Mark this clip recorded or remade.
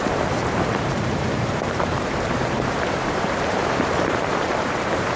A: remade